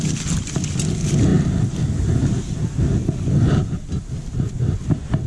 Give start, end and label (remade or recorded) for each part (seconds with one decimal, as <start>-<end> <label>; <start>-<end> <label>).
0.0-5.3 recorded